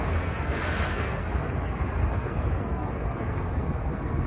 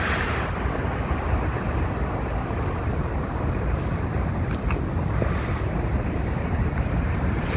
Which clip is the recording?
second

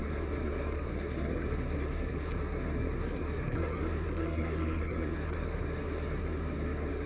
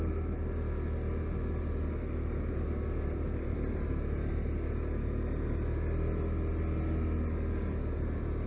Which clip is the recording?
second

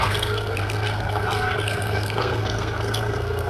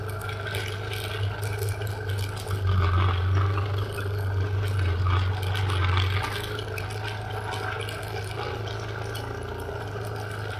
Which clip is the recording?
second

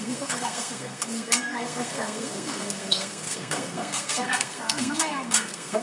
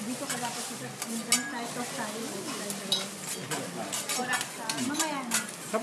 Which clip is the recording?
second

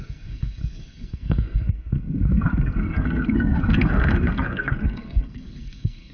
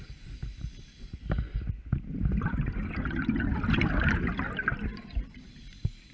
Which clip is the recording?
second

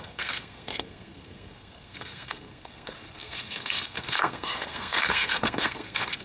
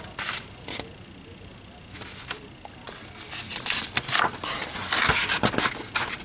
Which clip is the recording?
second